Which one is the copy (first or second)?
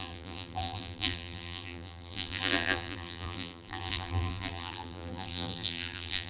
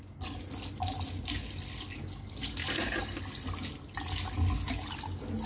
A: first